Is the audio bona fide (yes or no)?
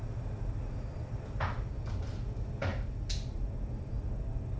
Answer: yes